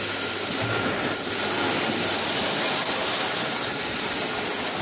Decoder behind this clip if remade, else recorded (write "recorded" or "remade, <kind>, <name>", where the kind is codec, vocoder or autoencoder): recorded